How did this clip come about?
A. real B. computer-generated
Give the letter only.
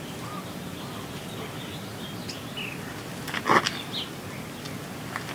A